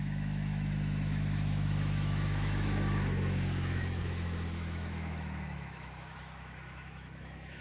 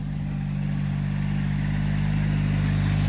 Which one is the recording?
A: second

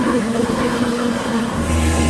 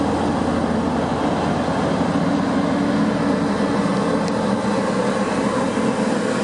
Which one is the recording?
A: second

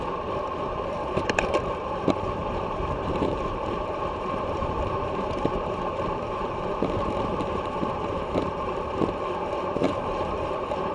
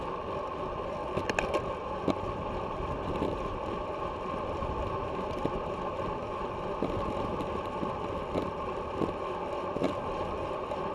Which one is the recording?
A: second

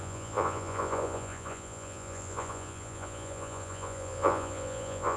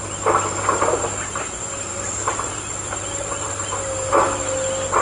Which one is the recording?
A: second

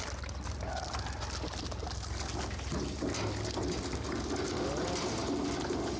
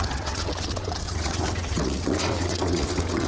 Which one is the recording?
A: first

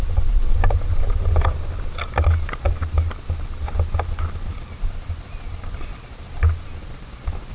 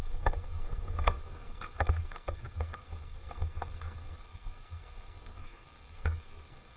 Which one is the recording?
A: first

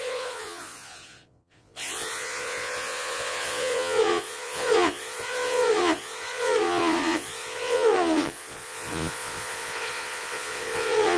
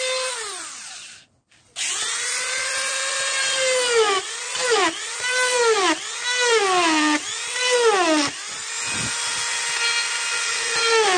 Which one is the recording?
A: second